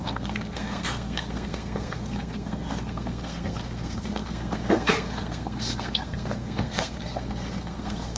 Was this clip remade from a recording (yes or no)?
yes